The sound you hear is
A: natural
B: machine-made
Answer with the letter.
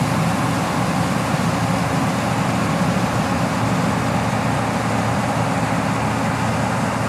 A